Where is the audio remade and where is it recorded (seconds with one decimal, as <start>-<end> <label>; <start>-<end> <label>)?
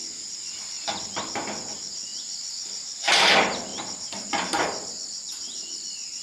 0.0-6.2 recorded